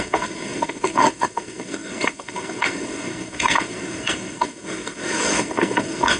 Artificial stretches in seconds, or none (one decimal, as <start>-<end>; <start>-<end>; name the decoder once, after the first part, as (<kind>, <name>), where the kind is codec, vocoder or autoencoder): 0.0-6.2 (codec, SNAC)